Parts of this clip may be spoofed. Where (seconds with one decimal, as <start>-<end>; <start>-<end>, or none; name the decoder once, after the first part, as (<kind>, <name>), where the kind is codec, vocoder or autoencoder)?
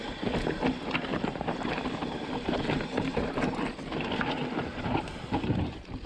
1.1-3.6 (vocoder, BigVGAN v2); 4.7-6.1